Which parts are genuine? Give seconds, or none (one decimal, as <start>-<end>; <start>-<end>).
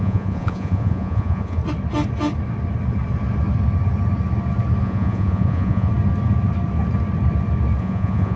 1.6-4.8; 5.9-7.8